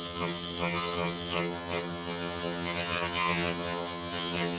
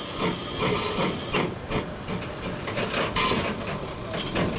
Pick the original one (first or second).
second